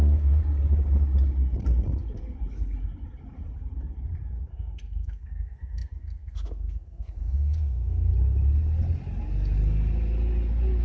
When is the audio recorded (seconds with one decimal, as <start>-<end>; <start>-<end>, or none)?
0.4-4.5; 8.1-10.8